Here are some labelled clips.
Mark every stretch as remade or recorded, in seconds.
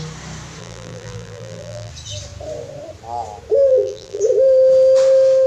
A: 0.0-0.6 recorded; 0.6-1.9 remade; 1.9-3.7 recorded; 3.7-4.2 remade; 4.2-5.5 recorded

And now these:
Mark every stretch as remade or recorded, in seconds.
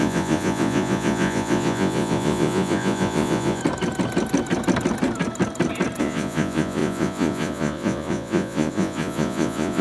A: 0.0-3.6 remade; 3.6-6.0 recorded; 6.0-9.8 remade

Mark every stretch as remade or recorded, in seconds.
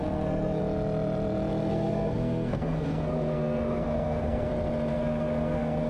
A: 0.0-0.6 remade; 0.6-1.7 recorded; 1.7-4.5 remade; 4.5-4.9 recorded; 4.9-5.9 remade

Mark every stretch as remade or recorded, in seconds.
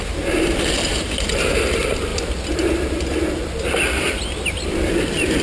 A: 0.0-5.4 recorded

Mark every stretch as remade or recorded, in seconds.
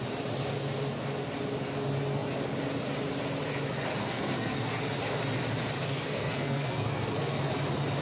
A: 0.0-4.0 recorded; 4.0-4.8 remade; 4.8-5.8 recorded; 5.8-7.5 remade; 7.5-8.0 recorded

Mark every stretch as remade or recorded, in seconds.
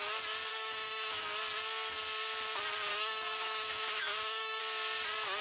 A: 0.0-0.5 recorded; 0.5-1.2 remade; 1.2-2.9 recorded; 2.9-4.6 remade; 4.6-5.4 recorded